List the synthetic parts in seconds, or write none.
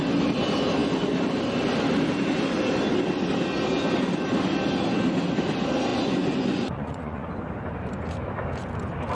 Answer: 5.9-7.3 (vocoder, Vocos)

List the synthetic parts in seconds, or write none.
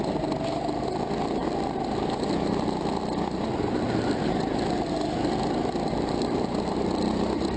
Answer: none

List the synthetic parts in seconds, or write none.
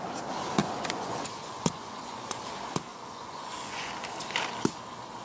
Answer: 0.6-2.4 (vocoder, Vocos); 2.9-3.9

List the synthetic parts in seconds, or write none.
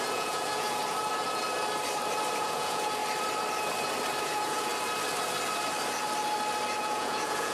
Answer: 0.0-0.8 (vocoder, Vocos); 2.3-3.0; 4.2-4.7; 6.8-7.5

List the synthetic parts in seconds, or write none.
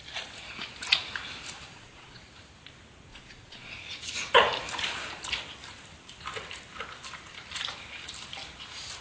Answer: 1.7-2.2 (vocoder, Vocos); 3.1-3.7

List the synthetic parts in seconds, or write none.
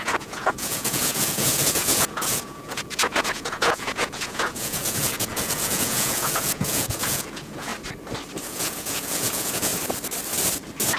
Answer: 0.0-7.7 (vocoder, Vocos); 8.4-9.7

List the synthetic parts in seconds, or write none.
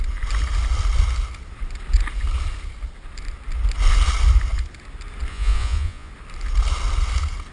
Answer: 5.3-6.1 (vocoder, Vocos)